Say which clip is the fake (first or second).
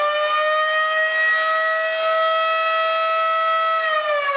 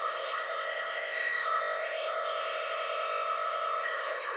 second